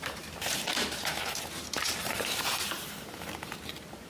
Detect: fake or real fake